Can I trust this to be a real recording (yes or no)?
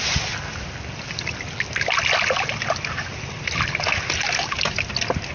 yes